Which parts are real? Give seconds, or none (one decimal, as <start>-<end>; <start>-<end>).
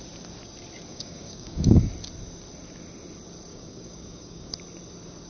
0.0-0.9; 1.8-3.5; 4.5-5.3